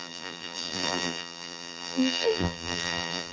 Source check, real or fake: fake